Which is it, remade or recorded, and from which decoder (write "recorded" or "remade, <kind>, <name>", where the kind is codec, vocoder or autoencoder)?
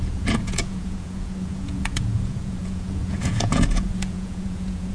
remade, vocoder, Vocos